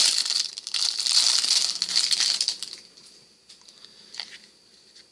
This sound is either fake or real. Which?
real